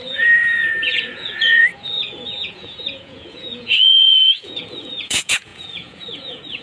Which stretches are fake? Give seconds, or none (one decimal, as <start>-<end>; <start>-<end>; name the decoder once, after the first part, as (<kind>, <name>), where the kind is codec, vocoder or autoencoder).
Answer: 0.0-6.6 (vocoder, Vocos)